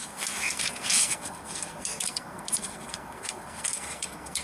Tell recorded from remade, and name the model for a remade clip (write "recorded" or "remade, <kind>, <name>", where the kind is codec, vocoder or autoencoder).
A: remade, codec, SNAC